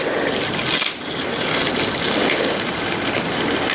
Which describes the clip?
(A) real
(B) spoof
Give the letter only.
A